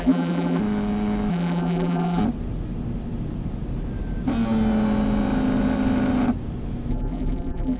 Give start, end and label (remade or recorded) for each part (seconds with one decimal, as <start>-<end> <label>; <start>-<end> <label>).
0.0-0.6 remade; 0.6-1.3 recorded; 1.3-2.2 remade; 2.2-6.9 recorded; 6.9-7.8 remade